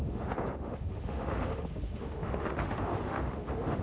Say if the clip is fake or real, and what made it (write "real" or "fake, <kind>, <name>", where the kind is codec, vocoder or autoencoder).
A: fake, autoencoder, DAC-VAE